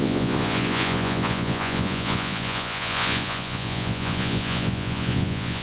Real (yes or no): no